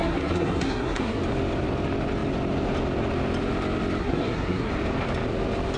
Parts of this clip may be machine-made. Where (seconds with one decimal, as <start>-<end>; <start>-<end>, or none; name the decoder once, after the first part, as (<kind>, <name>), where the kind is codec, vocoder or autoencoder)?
0.0-1.2 (codec, SNAC); 4.0-4.7